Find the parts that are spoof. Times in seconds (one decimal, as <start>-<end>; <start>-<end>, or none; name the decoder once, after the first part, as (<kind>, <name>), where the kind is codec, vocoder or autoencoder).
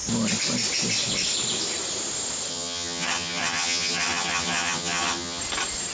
2.5-5.4 (vocoder, HiFi-GAN)